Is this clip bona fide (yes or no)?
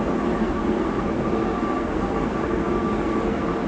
no